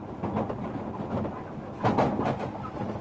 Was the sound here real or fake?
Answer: real